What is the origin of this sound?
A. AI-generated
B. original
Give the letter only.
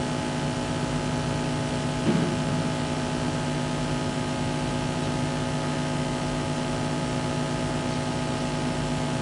B